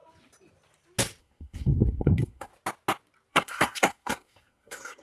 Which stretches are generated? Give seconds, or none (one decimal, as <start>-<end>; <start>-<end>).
1.2-2.5; 3.3-5.0